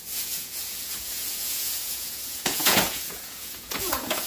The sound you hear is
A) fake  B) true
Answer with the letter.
A